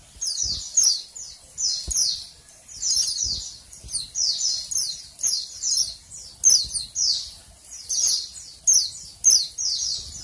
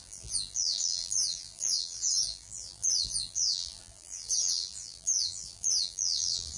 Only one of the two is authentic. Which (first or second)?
first